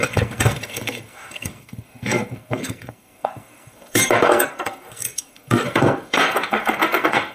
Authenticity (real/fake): fake